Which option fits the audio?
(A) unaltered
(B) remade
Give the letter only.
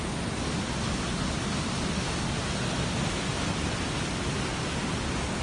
A